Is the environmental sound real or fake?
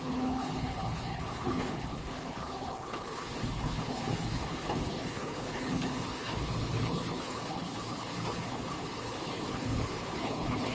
fake